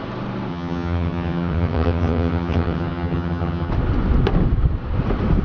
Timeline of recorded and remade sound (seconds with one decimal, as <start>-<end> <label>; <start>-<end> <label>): 0.0-0.5 recorded; 0.5-3.7 remade; 3.7-5.4 recorded